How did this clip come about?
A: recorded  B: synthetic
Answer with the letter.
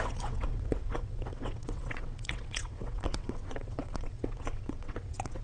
B